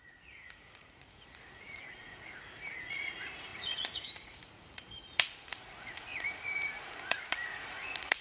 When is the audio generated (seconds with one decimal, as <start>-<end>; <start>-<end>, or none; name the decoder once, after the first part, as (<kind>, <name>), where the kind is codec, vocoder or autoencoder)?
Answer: 0.0-8.2 (vocoder, Vocos)

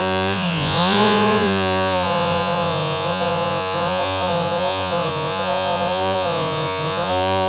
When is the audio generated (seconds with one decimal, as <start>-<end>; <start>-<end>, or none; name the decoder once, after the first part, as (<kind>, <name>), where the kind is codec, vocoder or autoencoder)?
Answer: 0.0-7.5 (vocoder, Vocos)

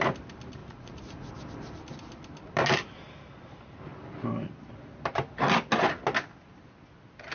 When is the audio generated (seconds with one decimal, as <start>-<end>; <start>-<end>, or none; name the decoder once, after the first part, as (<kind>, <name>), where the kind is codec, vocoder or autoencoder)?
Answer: 0.6-1.3 (vocoder, Vocos)

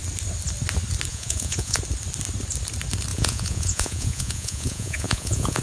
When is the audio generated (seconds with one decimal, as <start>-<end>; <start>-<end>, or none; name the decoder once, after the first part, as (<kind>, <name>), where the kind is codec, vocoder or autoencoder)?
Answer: 1.1-1.8 (vocoder, Vocos); 3.1-5.6

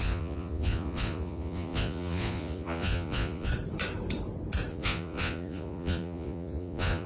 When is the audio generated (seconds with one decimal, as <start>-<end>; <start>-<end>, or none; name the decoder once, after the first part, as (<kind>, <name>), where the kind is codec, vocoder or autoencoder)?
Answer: 0.0-3.5 (vocoder, Vocos); 4.7-7.1

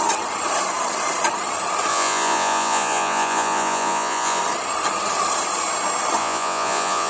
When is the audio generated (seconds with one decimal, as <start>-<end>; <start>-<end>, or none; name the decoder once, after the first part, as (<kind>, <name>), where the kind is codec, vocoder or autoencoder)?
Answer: 1.9-4.4 (vocoder, Vocos); 6.2-7.1

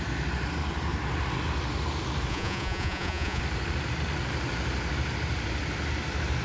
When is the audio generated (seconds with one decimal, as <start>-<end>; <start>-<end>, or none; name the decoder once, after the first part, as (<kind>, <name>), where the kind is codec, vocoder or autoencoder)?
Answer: 2.3-3.4 (vocoder, Vocos)

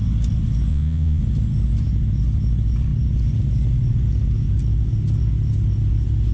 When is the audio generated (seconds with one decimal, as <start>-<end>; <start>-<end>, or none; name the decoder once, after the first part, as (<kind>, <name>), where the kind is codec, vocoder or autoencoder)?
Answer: 0.7-1.2 (vocoder, Vocos)